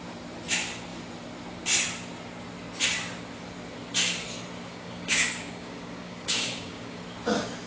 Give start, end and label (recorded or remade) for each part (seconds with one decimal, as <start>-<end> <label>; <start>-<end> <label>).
0.0-4.7 recorded; 4.7-7.0 remade; 7.0-7.7 recorded